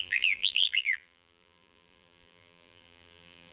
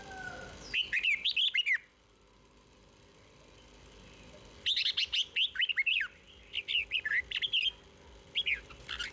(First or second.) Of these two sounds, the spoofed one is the first